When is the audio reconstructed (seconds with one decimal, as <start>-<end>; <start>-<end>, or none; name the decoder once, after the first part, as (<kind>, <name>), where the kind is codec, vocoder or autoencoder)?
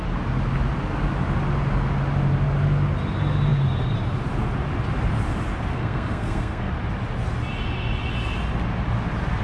5.7-6.7 (codec, SNAC)